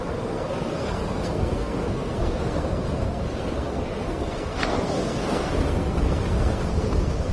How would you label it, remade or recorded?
remade